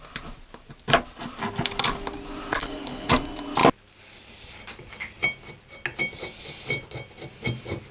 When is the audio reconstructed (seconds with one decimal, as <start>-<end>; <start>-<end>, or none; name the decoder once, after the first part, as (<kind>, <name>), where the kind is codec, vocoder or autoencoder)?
2.6-3.1 (codec, HILCodec)